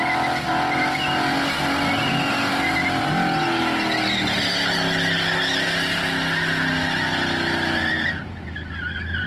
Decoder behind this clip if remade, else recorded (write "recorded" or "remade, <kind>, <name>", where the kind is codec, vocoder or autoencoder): recorded